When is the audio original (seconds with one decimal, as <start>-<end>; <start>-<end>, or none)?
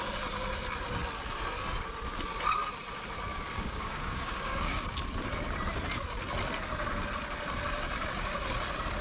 0.0-3.3; 5.0-9.0